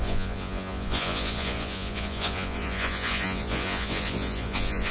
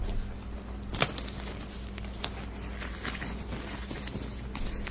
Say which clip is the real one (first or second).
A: second